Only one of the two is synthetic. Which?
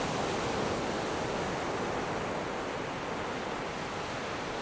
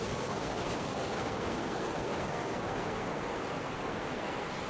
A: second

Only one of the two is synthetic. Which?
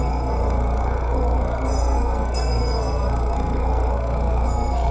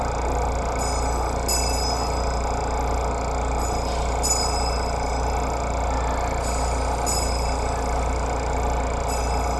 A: first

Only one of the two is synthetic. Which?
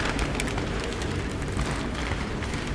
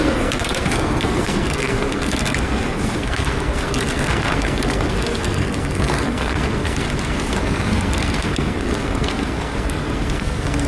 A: second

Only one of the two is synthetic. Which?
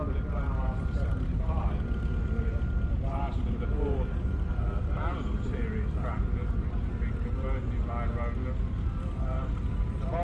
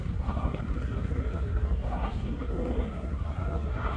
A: second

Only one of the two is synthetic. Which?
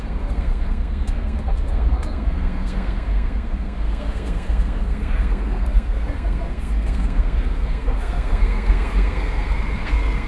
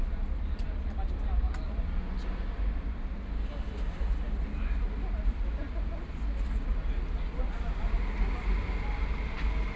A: first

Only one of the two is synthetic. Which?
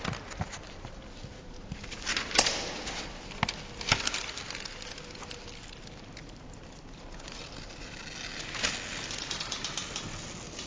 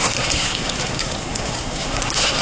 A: second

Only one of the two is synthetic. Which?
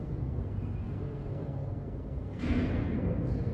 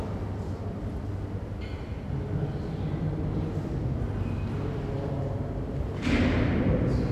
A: first